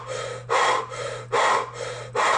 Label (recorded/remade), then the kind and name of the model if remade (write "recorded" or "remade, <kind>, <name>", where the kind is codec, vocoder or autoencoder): recorded